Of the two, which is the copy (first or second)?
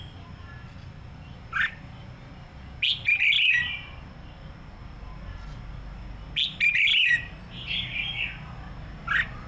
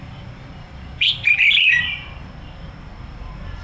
second